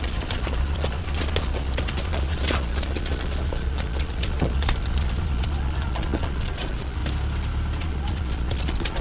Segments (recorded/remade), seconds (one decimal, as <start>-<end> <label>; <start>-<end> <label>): 0.0-7.0 remade; 7.0-7.8 recorded; 7.8-9.0 remade